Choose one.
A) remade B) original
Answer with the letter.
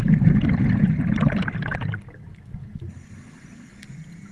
B